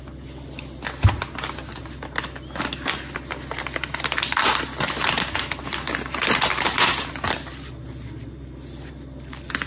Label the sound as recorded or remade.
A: recorded